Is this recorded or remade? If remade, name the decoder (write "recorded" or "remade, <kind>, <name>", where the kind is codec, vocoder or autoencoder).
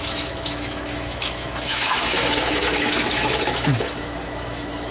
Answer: remade, autoencoder, DAC-VAE